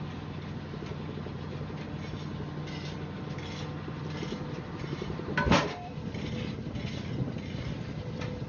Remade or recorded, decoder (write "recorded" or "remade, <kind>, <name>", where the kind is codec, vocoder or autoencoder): recorded